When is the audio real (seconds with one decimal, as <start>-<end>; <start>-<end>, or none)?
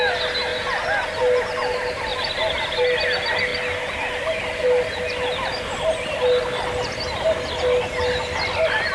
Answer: 0.0-8.9